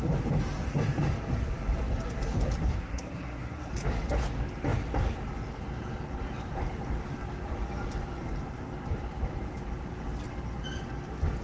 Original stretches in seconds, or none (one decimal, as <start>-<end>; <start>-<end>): 0.0-2.7; 3.7-11.4